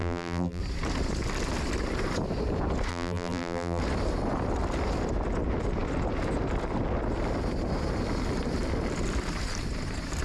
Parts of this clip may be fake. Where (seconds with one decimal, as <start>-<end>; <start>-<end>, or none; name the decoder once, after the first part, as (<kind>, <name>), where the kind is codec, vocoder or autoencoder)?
0.0-0.6 (vocoder, BigVGAN v2); 2.9-3.8